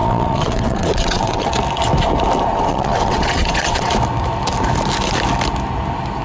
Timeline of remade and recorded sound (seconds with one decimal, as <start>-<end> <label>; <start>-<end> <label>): 0.0-1.5 remade; 1.5-2.5 recorded; 2.5-3.9 remade; 3.9-6.2 recorded